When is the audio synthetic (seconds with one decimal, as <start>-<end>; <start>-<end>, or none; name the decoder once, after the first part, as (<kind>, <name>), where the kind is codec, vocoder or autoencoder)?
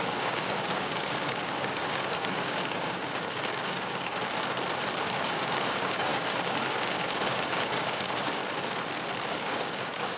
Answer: 0.0-4.1 (codec, DAC); 5.0-8.4; 9.3-10.2